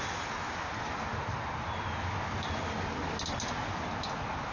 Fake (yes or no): no